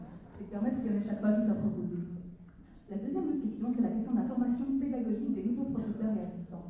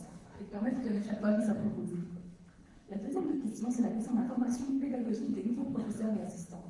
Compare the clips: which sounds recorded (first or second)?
first